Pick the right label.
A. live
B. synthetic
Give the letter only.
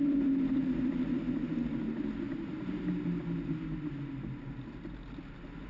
A